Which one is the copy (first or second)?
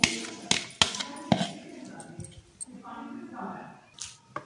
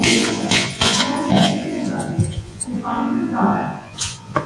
second